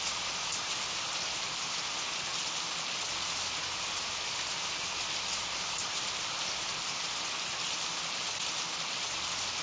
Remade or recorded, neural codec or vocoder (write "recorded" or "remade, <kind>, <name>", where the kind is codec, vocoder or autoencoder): recorded